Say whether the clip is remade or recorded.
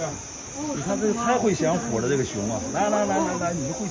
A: recorded